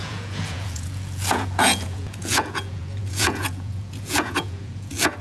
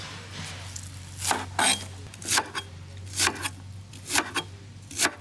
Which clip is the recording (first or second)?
second